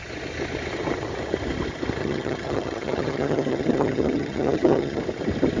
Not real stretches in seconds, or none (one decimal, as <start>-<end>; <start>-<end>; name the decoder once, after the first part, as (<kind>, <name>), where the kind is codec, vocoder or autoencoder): 2.0-5.0 (vocoder, HiFi-GAN)